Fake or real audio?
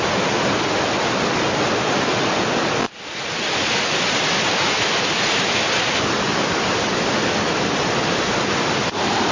real